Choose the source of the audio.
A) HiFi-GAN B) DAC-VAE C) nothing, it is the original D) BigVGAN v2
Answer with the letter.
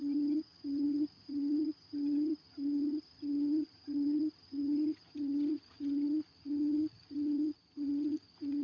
A